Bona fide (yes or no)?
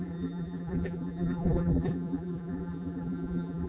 no